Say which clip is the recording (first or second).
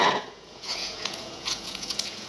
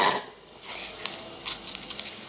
second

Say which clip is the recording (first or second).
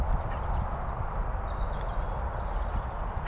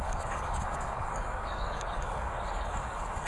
first